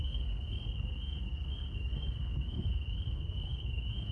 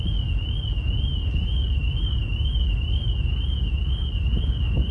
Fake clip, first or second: first